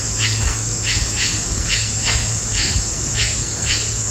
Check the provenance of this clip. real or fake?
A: fake